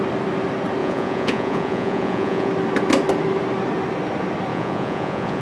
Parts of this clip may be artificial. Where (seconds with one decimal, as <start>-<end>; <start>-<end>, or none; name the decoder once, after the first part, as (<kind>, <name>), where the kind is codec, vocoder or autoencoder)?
0.8-2.5 (vocoder, Vocos); 4.5-5.4